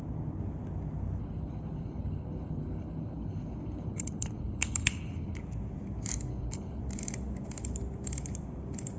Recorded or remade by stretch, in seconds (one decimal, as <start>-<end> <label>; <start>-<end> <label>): 0.0-1.2 recorded; 1.2-5.4 remade; 5.4-6.3 recorded; 6.3-6.8 remade; 6.8-9.0 recorded